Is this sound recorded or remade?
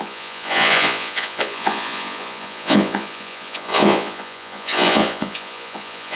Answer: remade